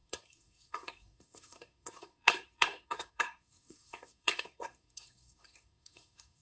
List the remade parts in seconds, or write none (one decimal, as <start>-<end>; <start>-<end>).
0.0-6.4